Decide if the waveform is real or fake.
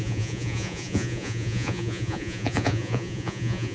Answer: fake